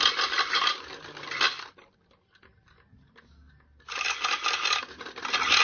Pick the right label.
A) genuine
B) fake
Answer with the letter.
A